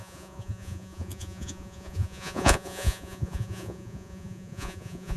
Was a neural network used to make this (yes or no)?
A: yes